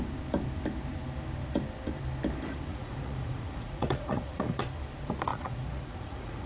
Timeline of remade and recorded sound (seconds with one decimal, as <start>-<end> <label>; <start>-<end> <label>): 0.0-2.7 recorded; 2.7-4.6 remade; 4.6-5.3 recorded; 5.3-6.5 remade